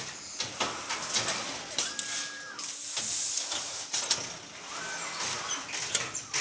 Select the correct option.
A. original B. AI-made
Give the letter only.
A